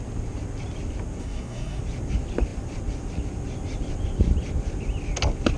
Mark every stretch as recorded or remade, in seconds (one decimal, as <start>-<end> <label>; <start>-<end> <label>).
0.0-1.2 recorded; 1.2-1.8 remade; 1.8-5.6 recorded